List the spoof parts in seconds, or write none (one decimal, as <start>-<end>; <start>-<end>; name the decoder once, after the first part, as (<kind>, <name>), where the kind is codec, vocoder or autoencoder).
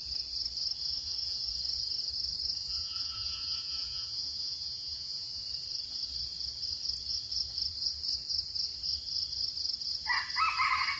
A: 0.9-1.5 (vocoder, Vocos); 2.6-5.4